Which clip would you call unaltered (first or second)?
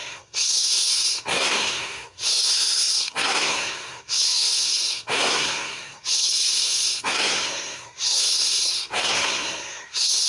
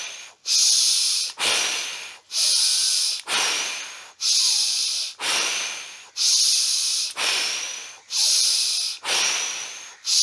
second